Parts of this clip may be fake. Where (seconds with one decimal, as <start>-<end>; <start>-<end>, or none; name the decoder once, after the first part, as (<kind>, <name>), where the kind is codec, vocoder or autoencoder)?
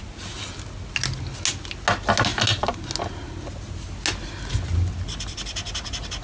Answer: none